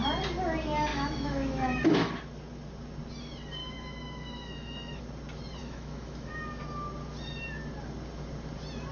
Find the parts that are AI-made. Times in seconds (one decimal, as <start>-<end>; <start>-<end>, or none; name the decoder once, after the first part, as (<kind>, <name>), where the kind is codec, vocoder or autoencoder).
0.9-2.1 (autoencoder, DAC-VAE); 3.6-5.0; 5.6-6.3